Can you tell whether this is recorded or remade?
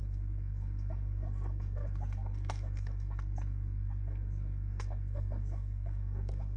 remade